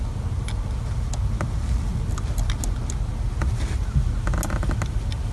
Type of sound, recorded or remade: recorded